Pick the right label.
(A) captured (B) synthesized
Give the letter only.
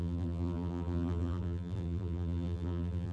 B